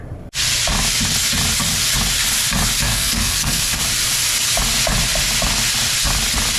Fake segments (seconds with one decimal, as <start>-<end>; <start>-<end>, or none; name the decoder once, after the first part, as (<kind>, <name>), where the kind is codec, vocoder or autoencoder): 2.9-3.8 (codec, SNAC)